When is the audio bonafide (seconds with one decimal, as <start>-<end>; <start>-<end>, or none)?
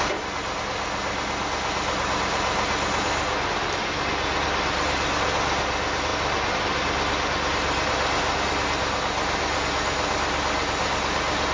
0.0-11.5